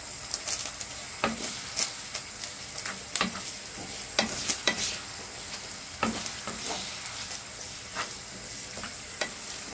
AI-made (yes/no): no